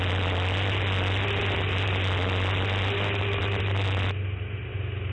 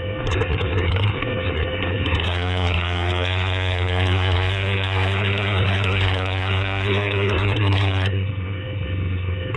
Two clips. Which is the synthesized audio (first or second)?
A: second